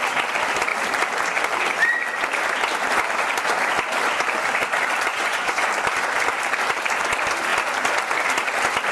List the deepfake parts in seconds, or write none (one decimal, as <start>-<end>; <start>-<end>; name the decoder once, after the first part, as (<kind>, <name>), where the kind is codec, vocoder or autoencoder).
5.1-5.7 (vocoder, Vocos)